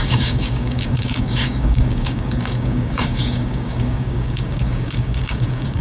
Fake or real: fake